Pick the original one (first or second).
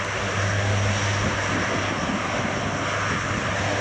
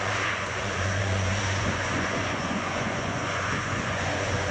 first